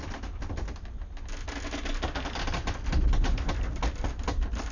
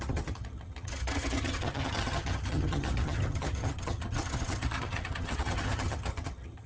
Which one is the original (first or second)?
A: first